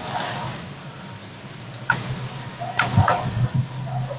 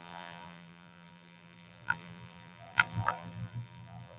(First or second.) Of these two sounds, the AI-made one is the second